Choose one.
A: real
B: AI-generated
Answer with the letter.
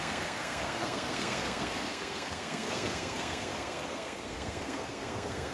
B